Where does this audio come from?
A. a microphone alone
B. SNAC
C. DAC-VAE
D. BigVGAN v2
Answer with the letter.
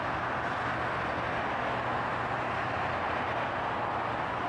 A